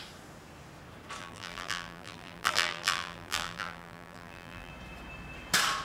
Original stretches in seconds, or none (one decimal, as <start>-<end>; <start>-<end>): 0.0-1.2; 4.7-5.8